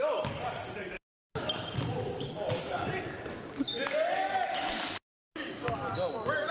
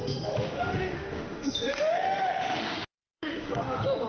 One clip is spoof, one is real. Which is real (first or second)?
first